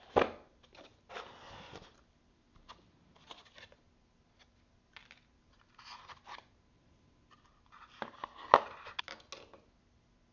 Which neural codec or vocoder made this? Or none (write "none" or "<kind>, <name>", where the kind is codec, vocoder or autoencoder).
none